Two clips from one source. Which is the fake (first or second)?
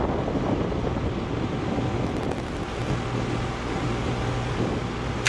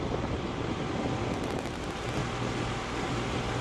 second